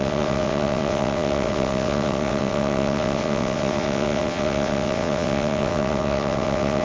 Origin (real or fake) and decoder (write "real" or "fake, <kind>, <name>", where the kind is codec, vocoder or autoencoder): fake, vocoder, WaveNeXt